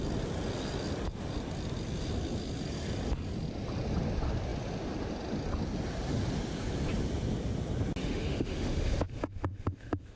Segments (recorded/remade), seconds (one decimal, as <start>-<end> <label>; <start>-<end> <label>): 0.0-8.0 recorded; 8.0-10.2 remade